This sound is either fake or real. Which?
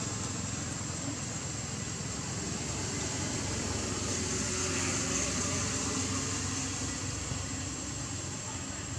real